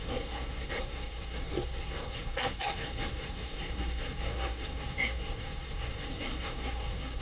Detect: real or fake fake